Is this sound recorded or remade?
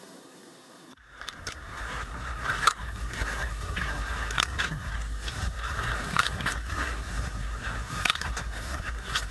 remade